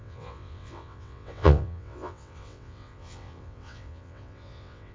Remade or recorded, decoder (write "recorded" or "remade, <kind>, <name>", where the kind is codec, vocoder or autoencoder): remade, vocoder, WaveNeXt